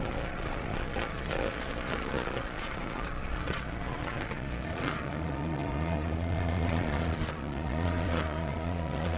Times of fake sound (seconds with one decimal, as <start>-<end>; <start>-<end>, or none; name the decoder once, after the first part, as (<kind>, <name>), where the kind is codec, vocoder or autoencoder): 0.0-9.2 (vocoder, Vocos)